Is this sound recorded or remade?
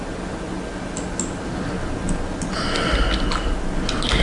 recorded